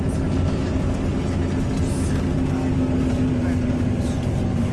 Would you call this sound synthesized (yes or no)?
no